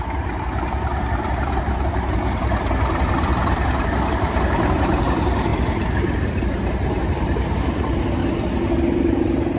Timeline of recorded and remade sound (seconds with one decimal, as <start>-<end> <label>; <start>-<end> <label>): 0.0-5.5 remade; 5.5-7.1 recorded; 7.1-8.2 remade; 8.2-8.8 recorded; 8.8-9.6 remade